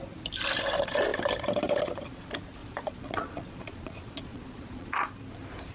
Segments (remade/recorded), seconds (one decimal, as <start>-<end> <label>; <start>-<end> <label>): 0.0-2.6 recorded; 2.6-4.9 remade; 4.9-5.7 recorded